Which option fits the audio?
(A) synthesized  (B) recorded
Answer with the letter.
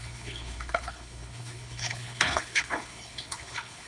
A